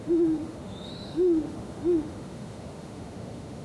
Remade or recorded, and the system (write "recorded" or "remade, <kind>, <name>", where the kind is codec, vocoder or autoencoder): remade, autoencoder, DAC-VAE